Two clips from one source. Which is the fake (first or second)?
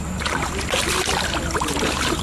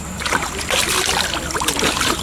second